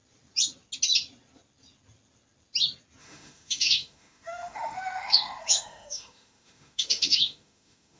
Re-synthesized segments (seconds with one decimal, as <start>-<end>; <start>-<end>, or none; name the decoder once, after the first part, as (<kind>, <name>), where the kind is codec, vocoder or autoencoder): 3.0-8.0 (autoencoder, DAC-VAE)